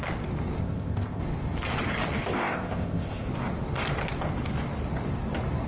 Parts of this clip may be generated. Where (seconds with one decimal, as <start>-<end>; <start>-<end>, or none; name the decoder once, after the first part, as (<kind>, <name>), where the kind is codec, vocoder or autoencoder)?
0.6-1.2 (codec, ZipCodec); 2.2-3.3